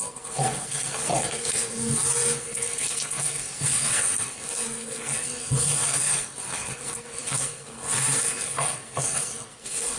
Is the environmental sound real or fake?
fake